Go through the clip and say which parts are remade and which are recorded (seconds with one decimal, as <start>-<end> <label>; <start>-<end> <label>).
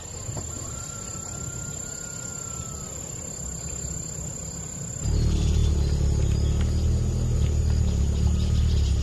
0.0-9.0 recorded